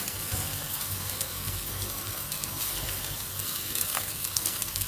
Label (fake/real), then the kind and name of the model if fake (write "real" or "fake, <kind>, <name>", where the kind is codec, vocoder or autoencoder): fake, codec, SNAC